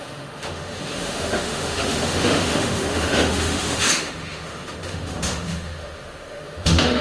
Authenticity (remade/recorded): remade